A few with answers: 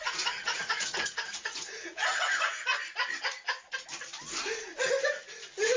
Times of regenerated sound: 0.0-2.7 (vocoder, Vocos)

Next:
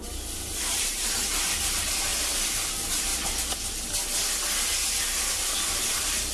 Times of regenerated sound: 0.0-2.1 (vocoder, BigVGAN v2); 2.7-3.1; 5.4-6.3

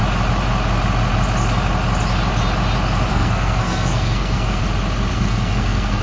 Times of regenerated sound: 3.1-4.6 (codec, SNAC); 5.1-6.0

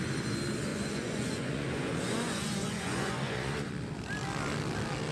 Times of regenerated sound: 0.7-3.7 (vocoder, Vocos)